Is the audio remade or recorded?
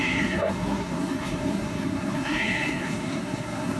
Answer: remade